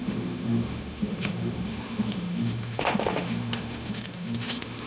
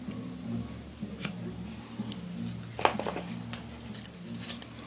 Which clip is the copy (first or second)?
first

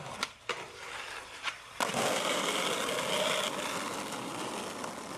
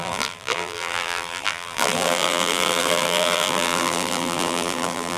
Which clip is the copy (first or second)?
second